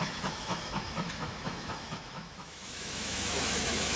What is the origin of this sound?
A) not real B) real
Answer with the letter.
A